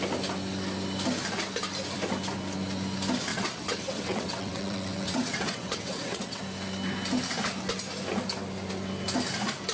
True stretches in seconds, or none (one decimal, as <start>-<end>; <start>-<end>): 0.0-3.3; 6.4-9.7